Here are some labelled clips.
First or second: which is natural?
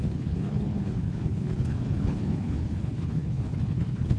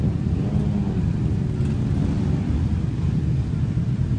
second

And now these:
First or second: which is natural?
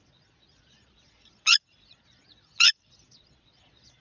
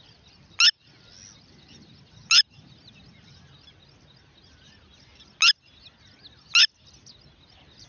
second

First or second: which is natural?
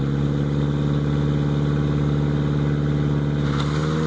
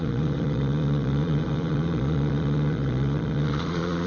first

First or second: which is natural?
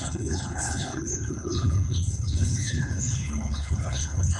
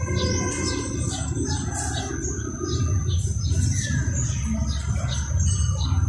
second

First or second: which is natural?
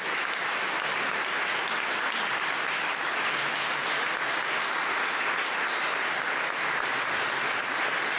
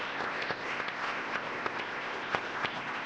first